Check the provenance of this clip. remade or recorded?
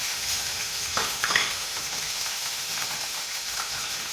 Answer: remade